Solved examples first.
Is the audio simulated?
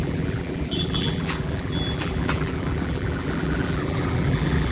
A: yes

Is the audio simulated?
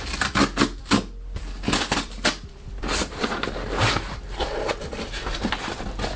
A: yes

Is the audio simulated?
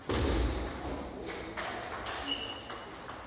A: no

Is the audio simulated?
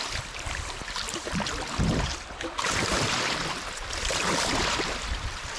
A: yes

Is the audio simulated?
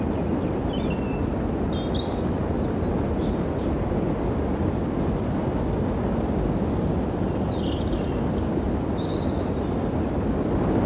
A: no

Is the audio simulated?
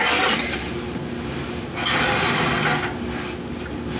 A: no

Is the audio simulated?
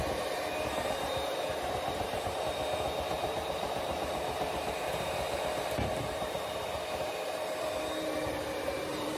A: yes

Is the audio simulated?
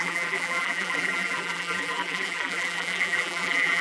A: yes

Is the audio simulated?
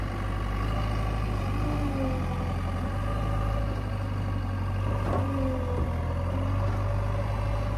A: no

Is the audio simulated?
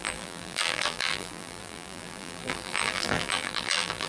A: yes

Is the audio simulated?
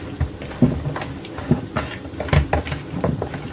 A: no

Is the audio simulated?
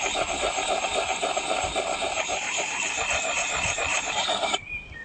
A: yes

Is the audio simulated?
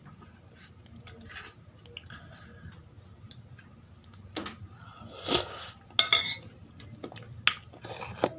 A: no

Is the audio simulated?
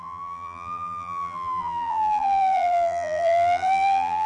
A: yes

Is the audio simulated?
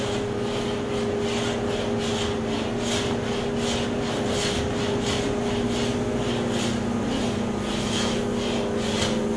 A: no